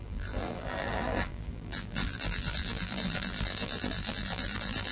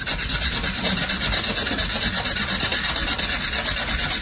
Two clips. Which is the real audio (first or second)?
second